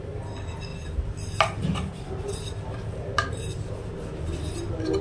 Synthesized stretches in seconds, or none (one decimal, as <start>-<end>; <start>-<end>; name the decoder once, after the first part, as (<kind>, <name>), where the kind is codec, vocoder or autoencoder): none